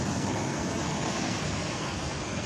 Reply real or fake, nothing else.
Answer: fake